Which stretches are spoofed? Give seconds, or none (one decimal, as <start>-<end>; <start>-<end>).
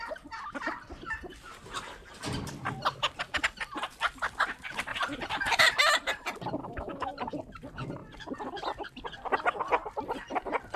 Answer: 6.6-7.1